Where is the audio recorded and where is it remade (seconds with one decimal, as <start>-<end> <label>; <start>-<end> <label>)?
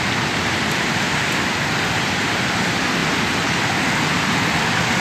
0.0-5.0 recorded